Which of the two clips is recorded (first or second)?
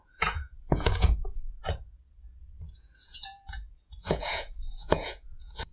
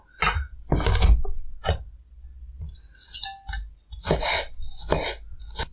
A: second